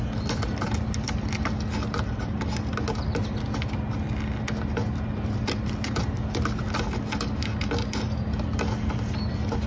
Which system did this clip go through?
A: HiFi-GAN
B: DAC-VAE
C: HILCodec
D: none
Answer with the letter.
D